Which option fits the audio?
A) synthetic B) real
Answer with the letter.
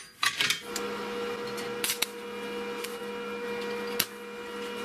B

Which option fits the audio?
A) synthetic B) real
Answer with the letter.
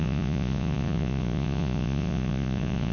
A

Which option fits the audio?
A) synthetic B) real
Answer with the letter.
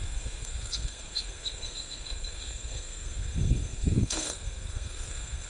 A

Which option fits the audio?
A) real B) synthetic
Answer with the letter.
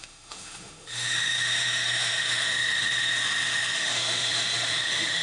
B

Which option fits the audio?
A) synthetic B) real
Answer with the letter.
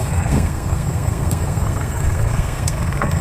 A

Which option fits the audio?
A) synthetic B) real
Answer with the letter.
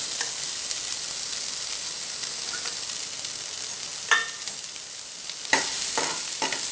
B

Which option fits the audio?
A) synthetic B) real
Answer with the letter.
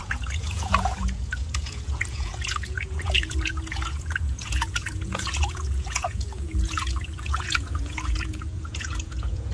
A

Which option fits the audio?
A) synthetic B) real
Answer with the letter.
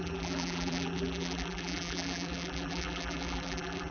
A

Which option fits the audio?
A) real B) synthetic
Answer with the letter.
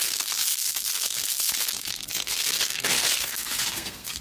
B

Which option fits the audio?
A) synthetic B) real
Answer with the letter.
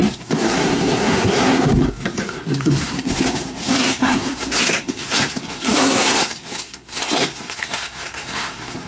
A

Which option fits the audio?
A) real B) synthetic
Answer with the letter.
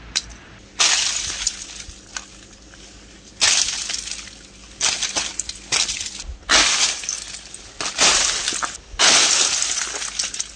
A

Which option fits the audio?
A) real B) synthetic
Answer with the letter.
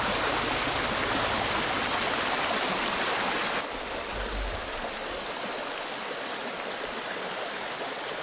A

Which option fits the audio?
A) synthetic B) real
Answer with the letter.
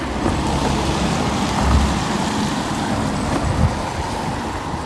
B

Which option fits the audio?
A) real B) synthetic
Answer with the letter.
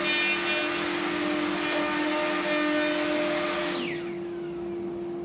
A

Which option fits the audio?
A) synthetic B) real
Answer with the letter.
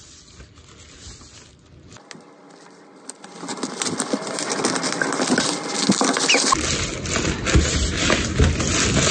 B